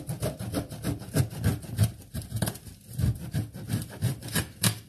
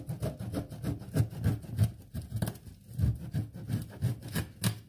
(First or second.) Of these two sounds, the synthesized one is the first